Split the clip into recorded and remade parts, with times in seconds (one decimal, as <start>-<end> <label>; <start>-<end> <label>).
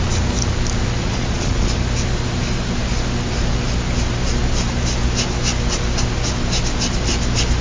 0.0-1.0 recorded; 1.0-1.7 remade; 1.7-7.6 recorded